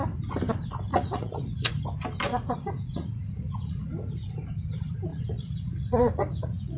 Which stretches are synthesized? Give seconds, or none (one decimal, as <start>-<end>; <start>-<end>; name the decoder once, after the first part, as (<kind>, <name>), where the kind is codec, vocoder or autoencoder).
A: 0.9-1.7 (vocoder, Vocos); 2.3-3.9; 5.1-6.8